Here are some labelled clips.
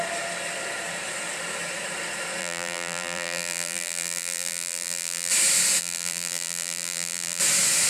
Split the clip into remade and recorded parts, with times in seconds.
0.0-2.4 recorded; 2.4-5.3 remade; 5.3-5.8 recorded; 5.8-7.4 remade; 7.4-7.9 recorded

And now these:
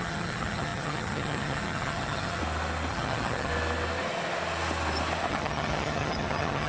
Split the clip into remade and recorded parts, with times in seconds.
0.0-2.4 remade; 2.4-2.9 recorded; 2.9-3.5 remade; 3.5-5.3 recorded; 5.3-6.7 remade

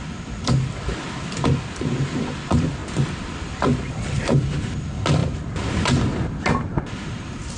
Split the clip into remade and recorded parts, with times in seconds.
0.0-7.6 recorded

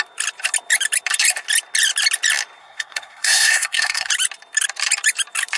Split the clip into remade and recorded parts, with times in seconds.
0.0-2.6 recorded; 2.6-4.1 remade; 4.1-5.6 recorded

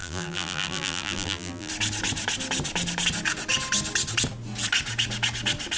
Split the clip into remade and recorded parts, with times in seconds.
0.0-1.7 remade; 1.7-5.8 recorded